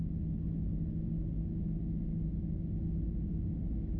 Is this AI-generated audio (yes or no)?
no